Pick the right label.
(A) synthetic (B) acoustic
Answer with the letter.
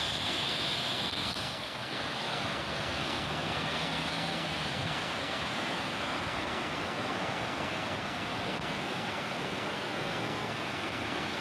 A